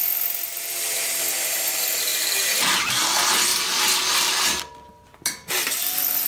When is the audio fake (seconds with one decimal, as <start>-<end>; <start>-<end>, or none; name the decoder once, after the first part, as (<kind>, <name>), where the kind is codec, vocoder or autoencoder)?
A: none

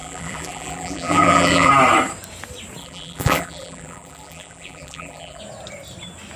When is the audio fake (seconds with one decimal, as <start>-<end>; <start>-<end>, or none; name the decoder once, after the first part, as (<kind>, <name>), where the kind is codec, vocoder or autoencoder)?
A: 0.0-1.7 (vocoder, BigVGAN v2); 2.8-5.4

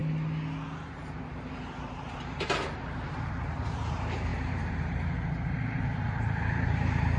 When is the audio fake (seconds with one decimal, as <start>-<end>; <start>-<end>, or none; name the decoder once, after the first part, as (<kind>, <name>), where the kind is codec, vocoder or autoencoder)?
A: 1.0-7.2 (vocoder, BigVGAN v2)

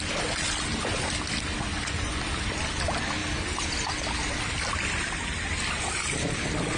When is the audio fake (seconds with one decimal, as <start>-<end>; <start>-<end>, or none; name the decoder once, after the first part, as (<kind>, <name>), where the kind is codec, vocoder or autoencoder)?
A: 1.7-2.2 (vocoder, Vocos)

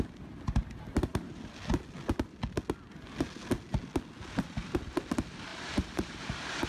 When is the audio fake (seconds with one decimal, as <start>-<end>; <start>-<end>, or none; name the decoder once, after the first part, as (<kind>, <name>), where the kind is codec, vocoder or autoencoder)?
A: 5.5-6.7 (vocoder, BigVGAN v2)

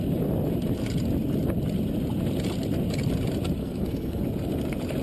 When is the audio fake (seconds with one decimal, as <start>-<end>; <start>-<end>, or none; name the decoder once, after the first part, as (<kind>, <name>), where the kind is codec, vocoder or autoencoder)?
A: 3.6-4.2 (codec, SNAC)